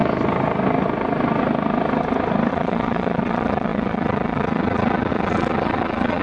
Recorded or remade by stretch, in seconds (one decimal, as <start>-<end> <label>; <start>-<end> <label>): 0.0-2.5 recorded; 2.5-6.2 remade